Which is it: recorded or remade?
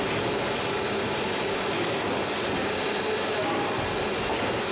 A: recorded